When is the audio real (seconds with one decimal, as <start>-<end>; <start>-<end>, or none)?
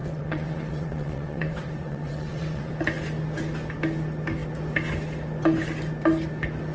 2.7-6.7